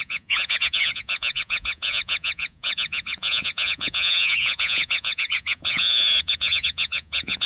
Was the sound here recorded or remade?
remade